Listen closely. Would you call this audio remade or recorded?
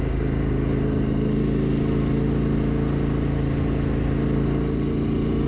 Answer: recorded